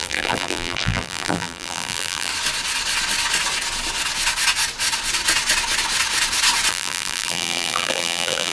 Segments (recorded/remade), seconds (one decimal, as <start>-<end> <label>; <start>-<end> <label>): 0.0-2.3 remade; 2.3-6.7 recorded; 6.7-8.5 remade